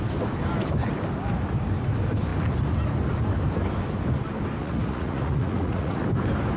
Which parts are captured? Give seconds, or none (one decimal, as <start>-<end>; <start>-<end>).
0.0-4.6; 6.0-6.6